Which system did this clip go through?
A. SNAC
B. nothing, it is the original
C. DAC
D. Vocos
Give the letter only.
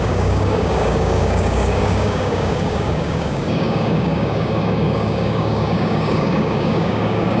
C